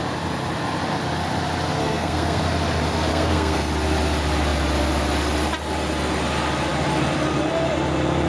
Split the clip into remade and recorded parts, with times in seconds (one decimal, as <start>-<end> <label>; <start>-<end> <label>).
0.0-1.8 recorded; 1.8-2.4 remade; 2.4-3.1 recorded; 3.1-3.7 remade; 3.7-8.3 recorded